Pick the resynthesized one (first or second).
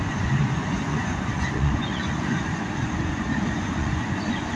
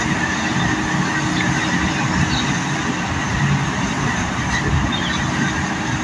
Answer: first